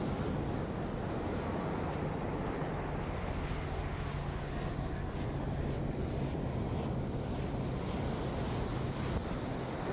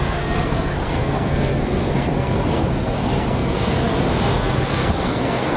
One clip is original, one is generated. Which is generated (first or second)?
second